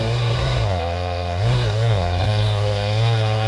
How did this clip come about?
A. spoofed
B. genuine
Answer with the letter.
A